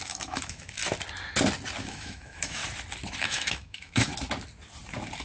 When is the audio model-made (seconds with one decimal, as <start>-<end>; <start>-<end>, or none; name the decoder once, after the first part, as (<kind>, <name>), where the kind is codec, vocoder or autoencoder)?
0.0-0.8 (autoencoder, DAC-VAE); 1.8-2.6; 3.2-4.1